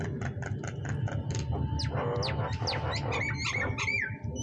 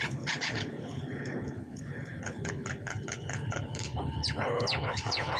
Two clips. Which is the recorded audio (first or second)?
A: first